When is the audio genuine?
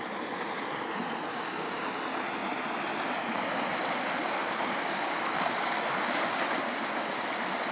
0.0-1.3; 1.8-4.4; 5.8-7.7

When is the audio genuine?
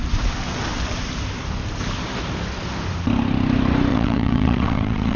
0.0-3.9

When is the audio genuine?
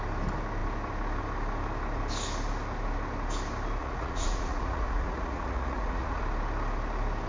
0.0-3.8; 6.2-7.3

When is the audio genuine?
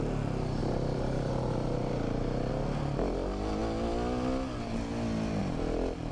0.0-0.6; 2.5-6.1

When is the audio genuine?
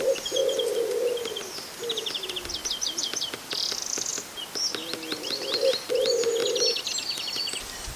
0.4-2.3; 4.1-5.9